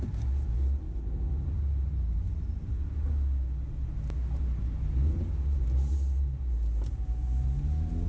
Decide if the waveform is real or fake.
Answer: real